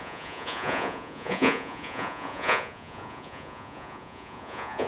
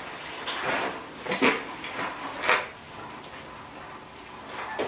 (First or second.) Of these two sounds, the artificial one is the first